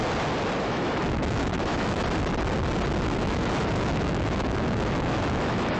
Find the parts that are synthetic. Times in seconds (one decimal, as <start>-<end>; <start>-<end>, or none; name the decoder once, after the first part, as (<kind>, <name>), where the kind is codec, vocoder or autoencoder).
0.6-2.0 (autoencoder, DAC-VAE); 3.2-5.8